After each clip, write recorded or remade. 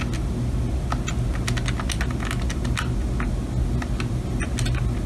recorded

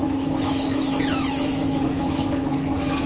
remade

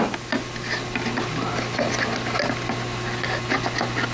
recorded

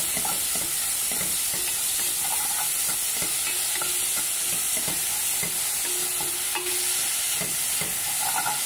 recorded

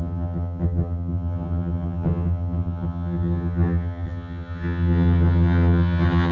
remade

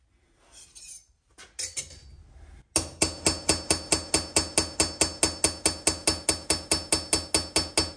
recorded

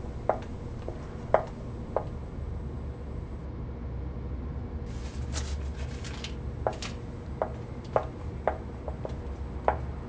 recorded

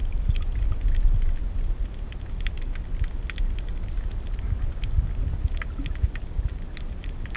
recorded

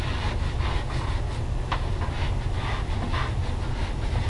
recorded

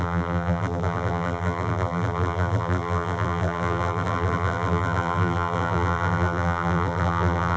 remade